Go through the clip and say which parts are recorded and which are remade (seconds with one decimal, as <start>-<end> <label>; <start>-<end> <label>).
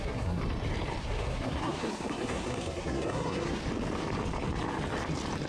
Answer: 0.0-0.4 remade; 0.4-1.0 recorded; 1.0-3.6 remade; 3.6-5.5 recorded